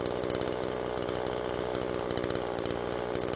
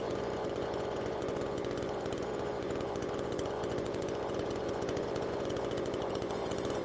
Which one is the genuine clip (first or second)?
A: first